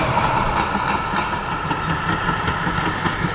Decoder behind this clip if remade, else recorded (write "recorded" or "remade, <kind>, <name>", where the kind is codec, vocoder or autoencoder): recorded